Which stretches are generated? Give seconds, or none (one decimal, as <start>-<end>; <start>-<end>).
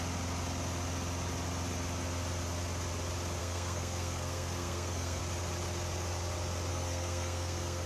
3.4-5.2; 6.7-7.9